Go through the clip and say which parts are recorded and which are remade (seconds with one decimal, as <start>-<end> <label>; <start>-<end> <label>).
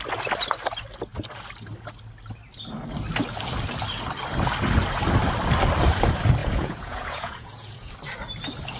0.0-6.4 recorded; 6.4-7.9 remade; 7.9-8.8 recorded